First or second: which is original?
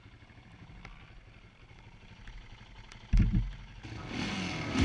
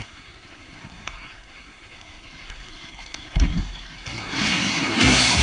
first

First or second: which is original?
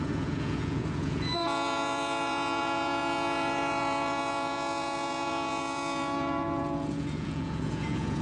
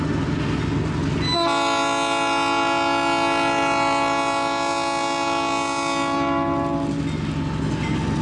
second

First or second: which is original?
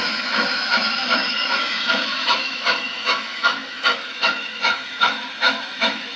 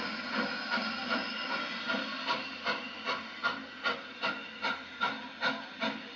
second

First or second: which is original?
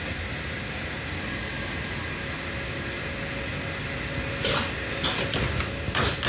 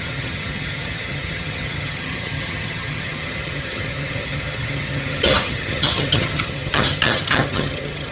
first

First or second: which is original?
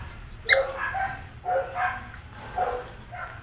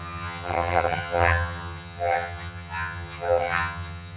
first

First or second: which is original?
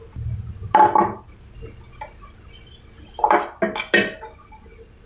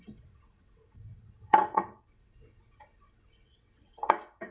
first